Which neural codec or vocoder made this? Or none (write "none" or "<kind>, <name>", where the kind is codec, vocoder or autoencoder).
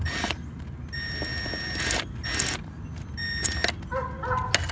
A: none